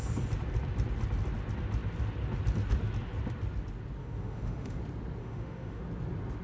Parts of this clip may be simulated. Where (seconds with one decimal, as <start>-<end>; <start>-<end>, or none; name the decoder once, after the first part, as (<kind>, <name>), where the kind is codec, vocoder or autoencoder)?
4.0-4.8 (autoencoder, DAC-VAE); 5.2-5.8